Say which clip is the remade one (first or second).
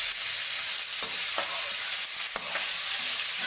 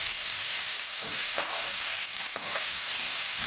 second